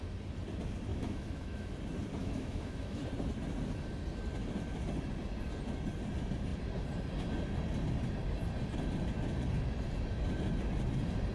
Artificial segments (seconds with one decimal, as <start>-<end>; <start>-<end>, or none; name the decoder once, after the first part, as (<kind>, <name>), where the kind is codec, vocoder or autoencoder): 0.9-1.7 (autoencoder, DAC-VAE); 2.2-3.0